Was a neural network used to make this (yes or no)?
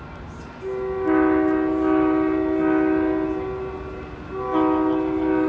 no